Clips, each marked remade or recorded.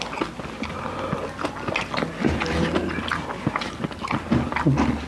recorded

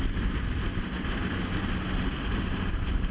recorded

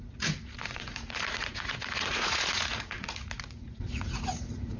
remade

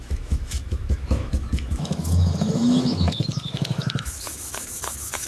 remade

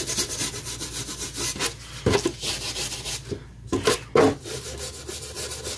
recorded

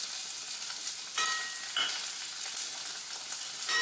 recorded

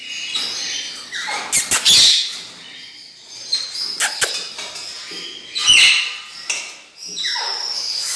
recorded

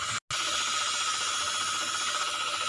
recorded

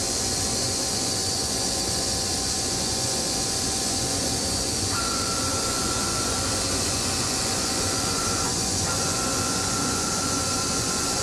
remade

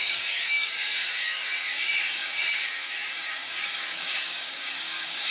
remade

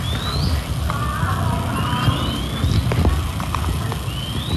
recorded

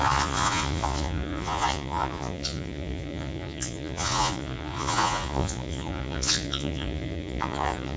remade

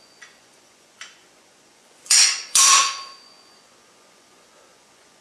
remade